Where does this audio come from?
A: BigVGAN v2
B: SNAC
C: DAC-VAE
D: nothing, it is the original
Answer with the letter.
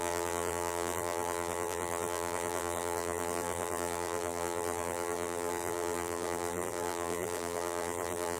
A